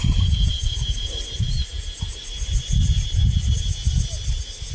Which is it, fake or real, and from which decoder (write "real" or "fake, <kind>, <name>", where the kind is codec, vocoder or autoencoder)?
real